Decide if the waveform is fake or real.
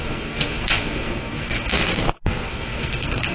fake